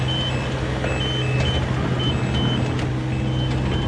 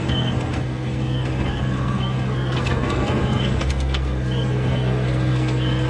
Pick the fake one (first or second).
second